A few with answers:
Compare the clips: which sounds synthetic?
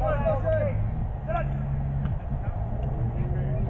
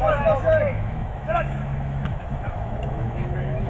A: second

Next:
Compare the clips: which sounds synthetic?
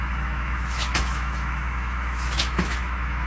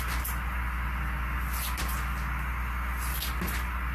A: first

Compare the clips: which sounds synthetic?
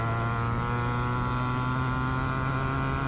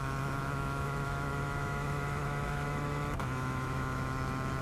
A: second